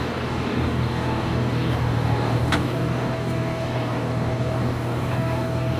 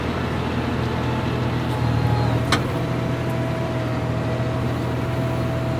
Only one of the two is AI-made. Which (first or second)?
first